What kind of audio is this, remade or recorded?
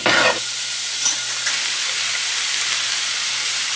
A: recorded